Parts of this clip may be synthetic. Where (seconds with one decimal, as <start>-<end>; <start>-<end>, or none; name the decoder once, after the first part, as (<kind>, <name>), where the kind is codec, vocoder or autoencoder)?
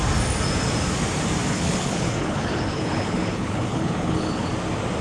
1.5-4.5 (codec, HILCodec)